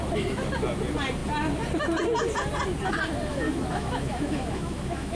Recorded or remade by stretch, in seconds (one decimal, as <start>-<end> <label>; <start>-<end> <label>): 0.0-3.3 recorded; 3.3-5.2 remade